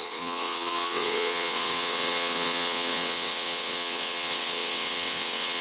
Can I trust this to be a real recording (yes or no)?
no